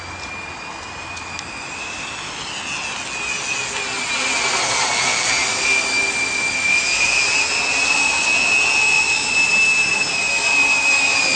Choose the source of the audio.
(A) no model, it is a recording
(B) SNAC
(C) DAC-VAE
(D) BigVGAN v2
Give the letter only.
A